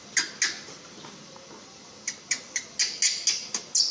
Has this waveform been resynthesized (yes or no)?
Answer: no